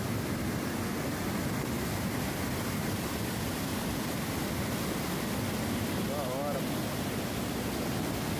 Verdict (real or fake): real